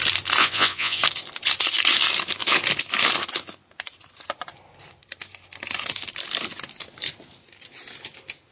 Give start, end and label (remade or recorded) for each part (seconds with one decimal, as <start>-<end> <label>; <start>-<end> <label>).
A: 0.0-0.4 recorded; 0.4-1.0 remade; 1.0-8.5 recorded